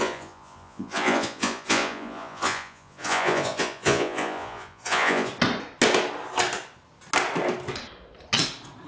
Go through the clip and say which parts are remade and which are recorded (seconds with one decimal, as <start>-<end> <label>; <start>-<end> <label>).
0.0-5.3 remade; 5.3-8.9 recorded